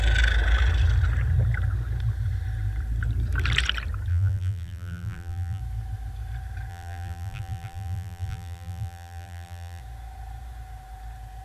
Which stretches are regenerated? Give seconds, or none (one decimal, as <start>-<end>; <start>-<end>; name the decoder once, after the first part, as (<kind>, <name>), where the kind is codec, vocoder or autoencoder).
4.1-5.6 (vocoder, BigVGAN v2); 6.7-9.8